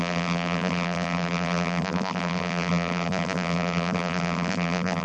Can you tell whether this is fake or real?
fake